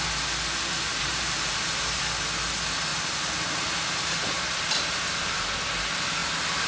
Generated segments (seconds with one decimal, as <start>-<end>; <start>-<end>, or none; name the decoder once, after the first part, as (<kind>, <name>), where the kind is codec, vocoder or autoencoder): 0.9-2.0 (vocoder, BigVGAN v2); 2.9-5.0